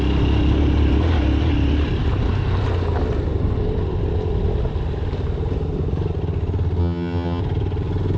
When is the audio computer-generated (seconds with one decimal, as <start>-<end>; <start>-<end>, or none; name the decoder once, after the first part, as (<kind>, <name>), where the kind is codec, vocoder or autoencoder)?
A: 6.8-7.4 (vocoder, HiFi-GAN)